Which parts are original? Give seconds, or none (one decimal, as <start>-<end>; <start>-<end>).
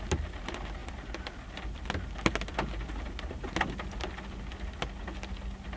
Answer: 0.0-5.8